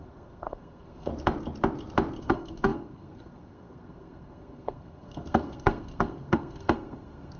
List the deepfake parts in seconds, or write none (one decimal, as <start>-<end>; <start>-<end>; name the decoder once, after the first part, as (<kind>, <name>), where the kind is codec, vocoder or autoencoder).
0.0-1.1 (codec, SNAC); 2.2-7.4